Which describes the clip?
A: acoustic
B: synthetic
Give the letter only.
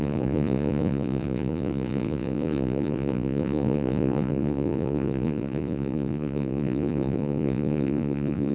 B